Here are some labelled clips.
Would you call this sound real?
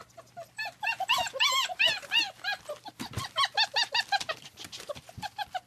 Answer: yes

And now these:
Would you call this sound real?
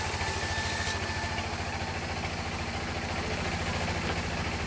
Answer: yes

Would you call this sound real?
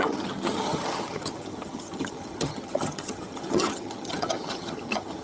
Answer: no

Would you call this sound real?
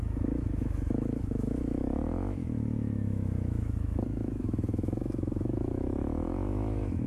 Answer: no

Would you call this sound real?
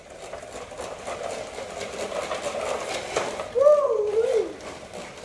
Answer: yes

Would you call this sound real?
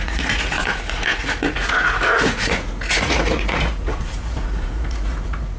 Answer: no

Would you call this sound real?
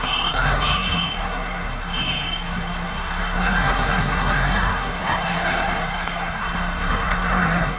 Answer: no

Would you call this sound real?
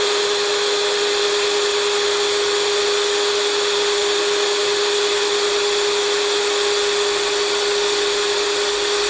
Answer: yes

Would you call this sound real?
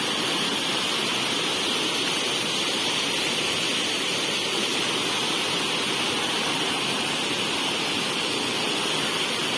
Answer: yes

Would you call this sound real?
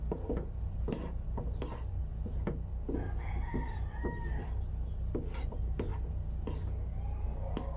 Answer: yes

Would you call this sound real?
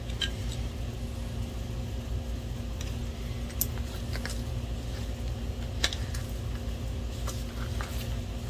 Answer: yes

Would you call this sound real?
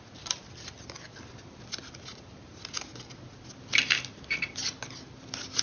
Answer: yes